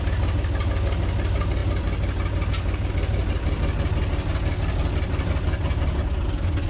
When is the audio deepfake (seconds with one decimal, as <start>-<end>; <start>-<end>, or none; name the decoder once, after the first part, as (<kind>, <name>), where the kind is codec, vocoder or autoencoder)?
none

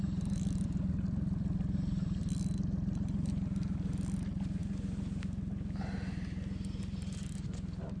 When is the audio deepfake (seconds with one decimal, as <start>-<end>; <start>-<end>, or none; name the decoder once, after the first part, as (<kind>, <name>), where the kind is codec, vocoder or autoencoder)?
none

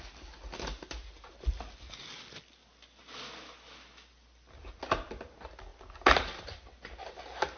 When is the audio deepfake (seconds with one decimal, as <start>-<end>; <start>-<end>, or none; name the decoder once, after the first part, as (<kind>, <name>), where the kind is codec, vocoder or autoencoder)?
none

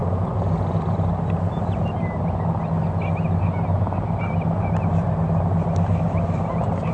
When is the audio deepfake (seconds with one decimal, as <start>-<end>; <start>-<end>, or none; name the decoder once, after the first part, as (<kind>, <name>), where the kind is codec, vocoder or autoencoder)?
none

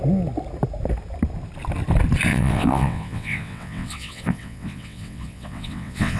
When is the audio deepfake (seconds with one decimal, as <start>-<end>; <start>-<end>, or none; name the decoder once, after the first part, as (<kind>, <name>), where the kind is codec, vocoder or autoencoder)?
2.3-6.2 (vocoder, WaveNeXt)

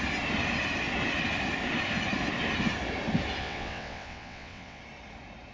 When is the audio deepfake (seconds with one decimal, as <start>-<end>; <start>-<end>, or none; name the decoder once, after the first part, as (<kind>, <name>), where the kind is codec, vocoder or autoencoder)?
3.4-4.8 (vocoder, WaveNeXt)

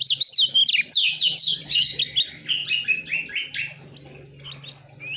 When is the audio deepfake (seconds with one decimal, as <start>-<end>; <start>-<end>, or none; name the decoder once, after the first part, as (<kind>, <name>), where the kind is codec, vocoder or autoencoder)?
1.0-2.0 (vocoder, WaveNeXt)

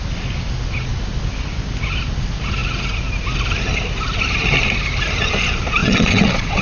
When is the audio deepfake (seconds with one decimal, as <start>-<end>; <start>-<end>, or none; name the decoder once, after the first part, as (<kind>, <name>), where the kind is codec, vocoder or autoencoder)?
5.8-6.6 (vocoder, WaveNeXt)